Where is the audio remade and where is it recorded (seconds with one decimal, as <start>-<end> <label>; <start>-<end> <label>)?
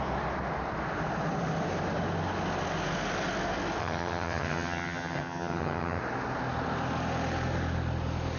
0.0-3.8 recorded; 3.8-6.0 remade; 6.0-8.4 recorded